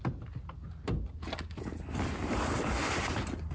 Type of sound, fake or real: real